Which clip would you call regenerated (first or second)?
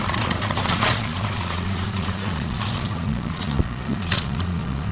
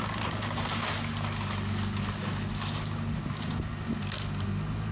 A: first